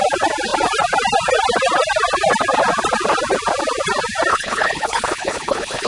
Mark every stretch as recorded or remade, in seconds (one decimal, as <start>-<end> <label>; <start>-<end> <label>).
0.0-4.3 recorded; 4.3-5.9 remade